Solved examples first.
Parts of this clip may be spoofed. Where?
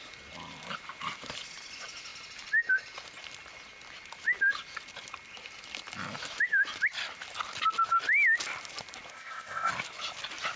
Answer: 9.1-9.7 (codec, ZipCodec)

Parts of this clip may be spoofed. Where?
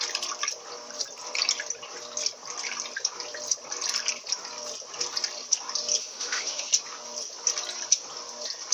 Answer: 6.0-6.7 (autoencoder, DAC-VAE)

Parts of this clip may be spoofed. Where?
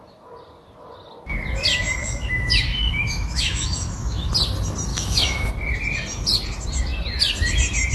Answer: 2.0-4.3 (autoencoder, DAC-VAE); 4.9-5.5